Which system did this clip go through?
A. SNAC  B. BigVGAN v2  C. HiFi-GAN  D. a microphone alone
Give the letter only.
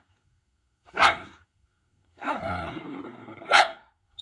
A